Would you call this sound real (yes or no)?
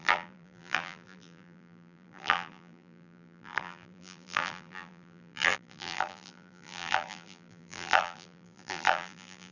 no